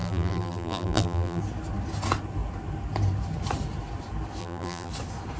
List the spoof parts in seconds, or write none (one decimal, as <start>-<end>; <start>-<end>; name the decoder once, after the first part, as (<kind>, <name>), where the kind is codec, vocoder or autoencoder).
0.0-1.4 (vocoder, BigVGAN v2); 4.4-4.9